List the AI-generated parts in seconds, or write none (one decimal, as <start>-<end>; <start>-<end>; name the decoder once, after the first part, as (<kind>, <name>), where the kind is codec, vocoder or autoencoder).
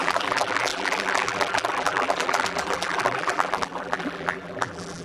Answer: 0.0-5.0 (vocoder, BigVGAN v2)